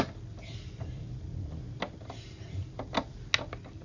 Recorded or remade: recorded